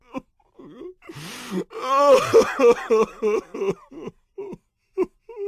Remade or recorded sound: recorded